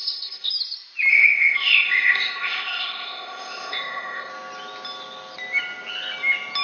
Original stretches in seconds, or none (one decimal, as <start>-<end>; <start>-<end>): 0.5-1.1; 4.3-6.6